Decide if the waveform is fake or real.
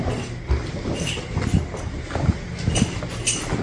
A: real